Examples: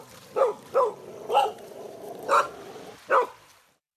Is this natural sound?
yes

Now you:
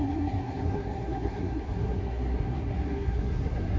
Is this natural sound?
no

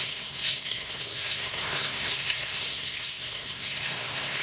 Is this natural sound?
no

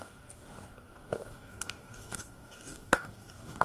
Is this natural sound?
no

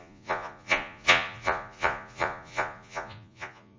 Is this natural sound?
no